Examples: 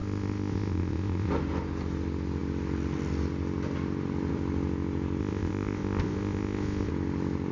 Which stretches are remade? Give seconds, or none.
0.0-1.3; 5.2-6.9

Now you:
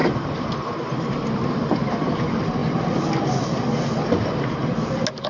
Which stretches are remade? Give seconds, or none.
0.0-2.1

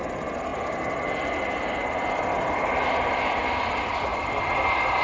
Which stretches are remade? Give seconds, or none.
4.1-5.0

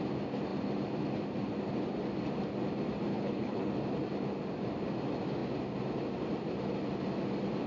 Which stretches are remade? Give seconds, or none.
3.1-3.7

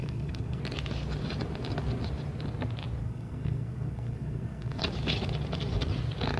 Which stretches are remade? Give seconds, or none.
0.0-0.6; 3.0-4.8

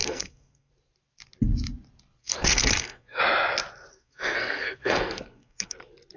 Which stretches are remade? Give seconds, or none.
0.0-0.7; 2.2-3.2; 3.9-5.8

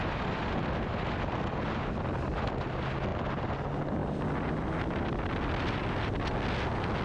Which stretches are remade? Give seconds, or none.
4.0-4.7

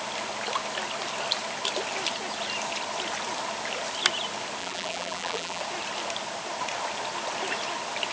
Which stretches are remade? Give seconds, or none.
4.6-5.6